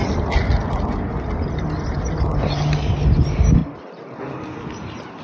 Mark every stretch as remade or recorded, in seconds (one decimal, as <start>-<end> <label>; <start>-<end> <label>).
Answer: 0.0-3.6 recorded; 3.6-4.2 remade; 4.2-5.2 recorded